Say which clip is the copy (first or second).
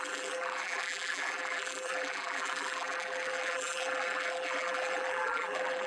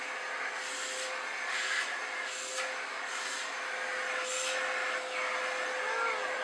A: first